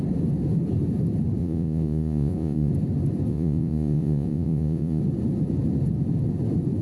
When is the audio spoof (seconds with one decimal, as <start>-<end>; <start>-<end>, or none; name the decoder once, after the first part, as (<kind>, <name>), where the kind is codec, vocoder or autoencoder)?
1.4-2.7 (vocoder, Vocos); 3.3-5.0